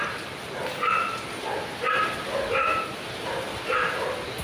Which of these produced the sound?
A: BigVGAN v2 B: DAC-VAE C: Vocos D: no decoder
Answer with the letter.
D